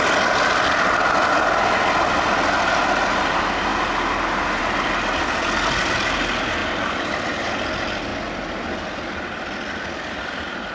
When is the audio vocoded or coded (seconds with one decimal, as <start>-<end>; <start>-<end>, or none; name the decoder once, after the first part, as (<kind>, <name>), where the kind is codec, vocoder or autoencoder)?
none

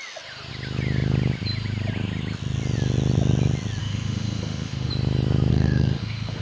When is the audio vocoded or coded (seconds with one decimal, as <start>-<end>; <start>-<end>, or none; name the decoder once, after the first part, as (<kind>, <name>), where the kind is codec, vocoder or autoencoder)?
3.8-4.9 (autoencoder, DAC-VAE); 5.5-6.4